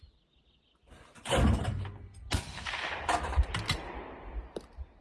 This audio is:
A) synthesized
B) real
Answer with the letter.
B